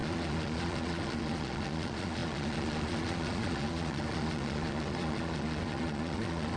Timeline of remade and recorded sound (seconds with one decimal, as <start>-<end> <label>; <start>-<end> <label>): 0.0-6.6 remade